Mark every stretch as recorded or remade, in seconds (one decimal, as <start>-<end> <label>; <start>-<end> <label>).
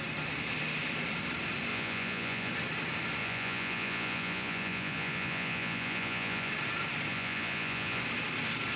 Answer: 0.0-1.7 recorded; 1.7-2.5 remade; 2.5-3.2 recorded; 3.2-6.5 remade; 6.5-7.1 recorded; 7.1-8.0 remade; 8.0-8.8 recorded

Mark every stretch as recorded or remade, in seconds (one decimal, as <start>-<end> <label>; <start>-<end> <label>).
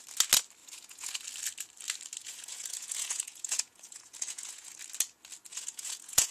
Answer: 0.0-0.6 recorded; 0.6-1.2 remade; 1.2-2.2 recorded; 2.2-4.7 remade; 4.7-5.5 recorded; 5.5-6.3 remade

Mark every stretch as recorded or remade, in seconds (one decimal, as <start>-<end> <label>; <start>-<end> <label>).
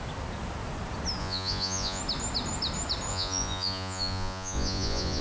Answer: 0.0-1.2 recorded; 1.2-2.0 remade; 2.0-3.1 recorded; 3.1-5.2 remade